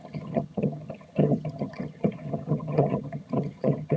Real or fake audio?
fake